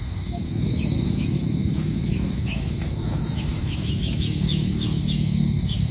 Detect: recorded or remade remade